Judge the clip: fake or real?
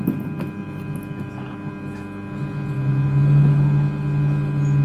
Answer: real